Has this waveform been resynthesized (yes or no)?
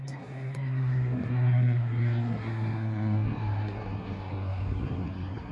yes